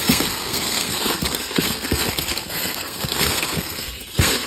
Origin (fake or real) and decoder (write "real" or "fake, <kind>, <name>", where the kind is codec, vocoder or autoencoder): fake, codec, SNAC